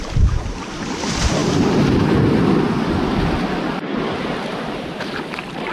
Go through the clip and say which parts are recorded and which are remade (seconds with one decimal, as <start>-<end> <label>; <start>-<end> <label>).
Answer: 0.0-4.5 recorded; 4.5-5.1 remade; 5.1-5.7 recorded